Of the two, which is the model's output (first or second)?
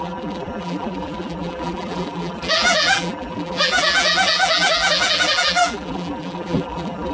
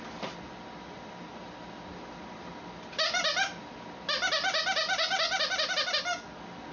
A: first